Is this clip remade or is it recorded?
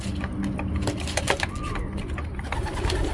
recorded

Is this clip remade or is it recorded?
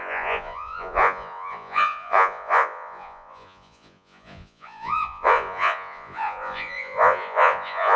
remade